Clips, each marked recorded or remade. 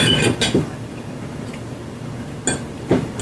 recorded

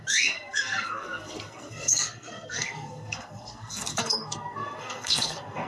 remade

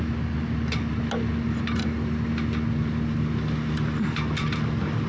recorded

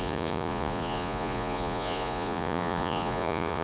remade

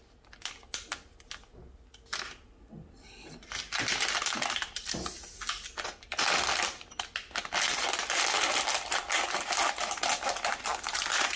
recorded